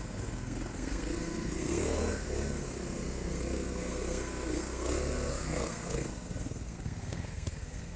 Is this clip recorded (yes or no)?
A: no